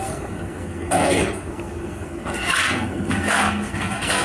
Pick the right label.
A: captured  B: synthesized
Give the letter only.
B